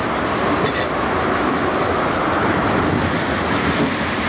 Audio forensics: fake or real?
real